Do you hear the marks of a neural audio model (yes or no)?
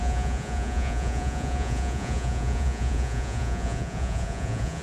yes